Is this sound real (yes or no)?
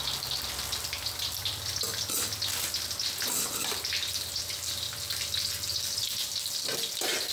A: yes